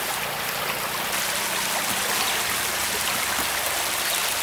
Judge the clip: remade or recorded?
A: recorded